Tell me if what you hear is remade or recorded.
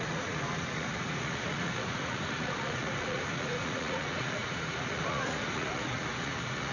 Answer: remade